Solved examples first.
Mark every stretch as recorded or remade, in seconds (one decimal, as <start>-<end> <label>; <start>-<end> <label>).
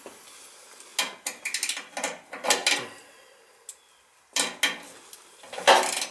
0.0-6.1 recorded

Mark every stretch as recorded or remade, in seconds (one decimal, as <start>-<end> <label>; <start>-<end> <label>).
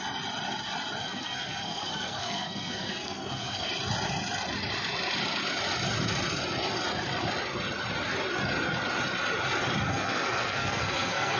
0.0-1.0 recorded; 1.0-3.7 remade; 3.7-9.9 recorded; 9.9-11.4 remade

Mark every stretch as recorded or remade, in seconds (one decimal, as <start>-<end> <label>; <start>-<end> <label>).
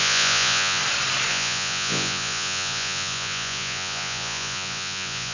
0.0-0.8 remade; 0.8-1.3 recorded; 1.3-5.3 remade